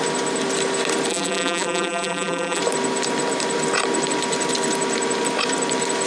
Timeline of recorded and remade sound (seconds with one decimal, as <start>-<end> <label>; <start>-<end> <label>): 0.0-1.1 recorded; 1.1-2.6 remade; 2.6-6.1 recorded